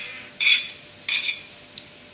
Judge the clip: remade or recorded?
recorded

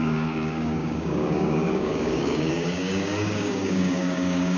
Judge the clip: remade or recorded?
remade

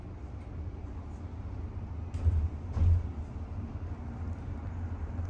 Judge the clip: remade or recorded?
recorded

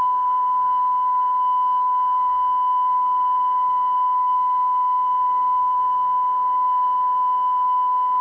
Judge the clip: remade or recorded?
remade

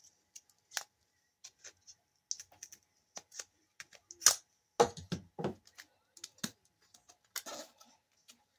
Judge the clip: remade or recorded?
recorded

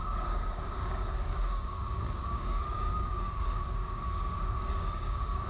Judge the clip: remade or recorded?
remade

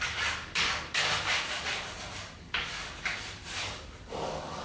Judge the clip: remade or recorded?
remade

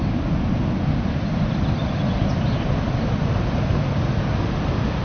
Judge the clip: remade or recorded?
recorded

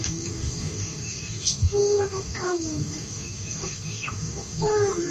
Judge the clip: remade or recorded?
remade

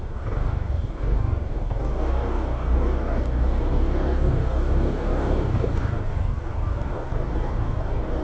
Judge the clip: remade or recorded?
remade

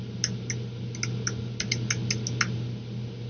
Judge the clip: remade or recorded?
recorded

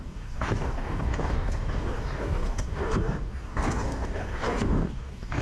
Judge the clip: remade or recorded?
remade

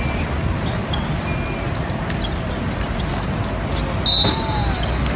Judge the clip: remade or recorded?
recorded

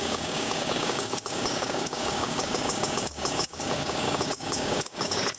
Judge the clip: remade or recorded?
remade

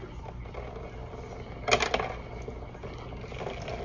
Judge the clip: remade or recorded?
recorded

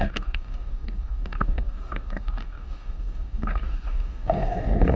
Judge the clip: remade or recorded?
remade